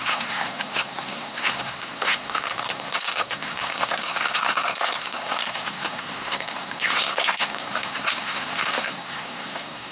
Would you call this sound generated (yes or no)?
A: yes